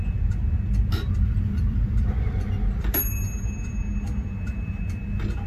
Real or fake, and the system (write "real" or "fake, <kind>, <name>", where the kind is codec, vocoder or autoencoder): real